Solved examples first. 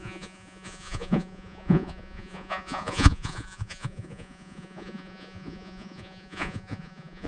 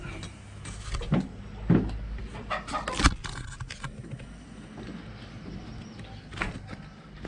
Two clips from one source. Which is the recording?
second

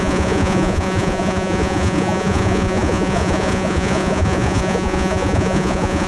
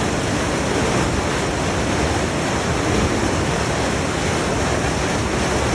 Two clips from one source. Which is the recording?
second